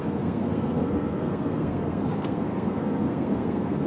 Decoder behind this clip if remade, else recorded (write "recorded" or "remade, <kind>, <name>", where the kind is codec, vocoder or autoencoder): remade, codec, SNAC